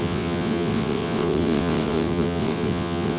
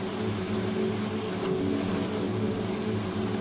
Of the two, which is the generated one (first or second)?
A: first